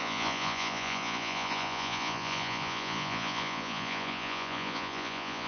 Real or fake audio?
fake